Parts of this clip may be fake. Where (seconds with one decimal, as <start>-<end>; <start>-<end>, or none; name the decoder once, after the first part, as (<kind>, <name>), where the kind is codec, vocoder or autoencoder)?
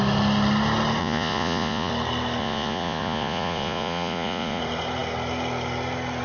1.0-1.9 (vocoder, Vocos); 2.4-4.6